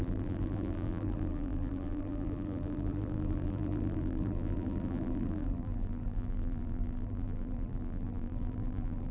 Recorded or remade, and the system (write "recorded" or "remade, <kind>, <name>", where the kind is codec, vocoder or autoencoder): remade, vocoder, BigVGAN v2